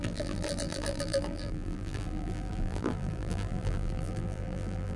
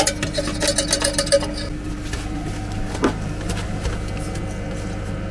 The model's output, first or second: first